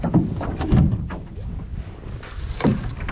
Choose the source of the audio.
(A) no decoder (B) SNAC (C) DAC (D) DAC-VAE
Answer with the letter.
C